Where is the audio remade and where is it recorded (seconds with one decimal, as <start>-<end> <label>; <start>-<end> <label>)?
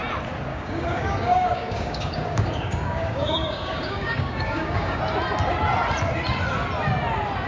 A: 0.0-0.5 recorded; 0.5-5.0 remade; 5.0-7.5 recorded